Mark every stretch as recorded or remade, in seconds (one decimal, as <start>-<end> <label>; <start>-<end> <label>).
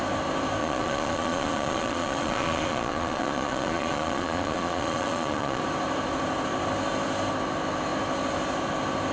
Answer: 0.0-0.6 recorded; 0.6-5.6 remade; 5.6-9.1 recorded